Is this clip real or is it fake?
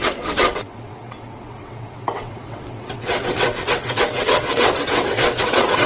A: fake